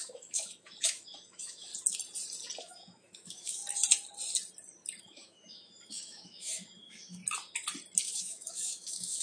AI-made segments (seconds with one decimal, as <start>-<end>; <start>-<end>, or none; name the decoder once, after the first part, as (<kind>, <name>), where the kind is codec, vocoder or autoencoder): 0.0-1.7 (autoencoder, DAC-VAE); 2.6-3.6; 5.0-7.2; 8.0-9.2